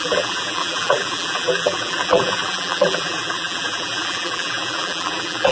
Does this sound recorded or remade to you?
remade